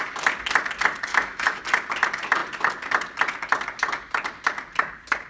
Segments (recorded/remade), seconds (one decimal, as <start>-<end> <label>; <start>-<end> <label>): 0.0-1.1 recorded; 1.1-1.6 remade; 1.6-5.3 recorded